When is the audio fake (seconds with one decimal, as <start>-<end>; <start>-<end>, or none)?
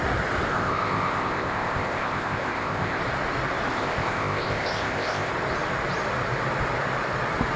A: 0.5-3.0; 3.7-5.3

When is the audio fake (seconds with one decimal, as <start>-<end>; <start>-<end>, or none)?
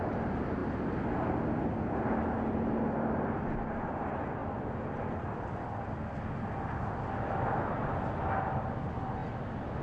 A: none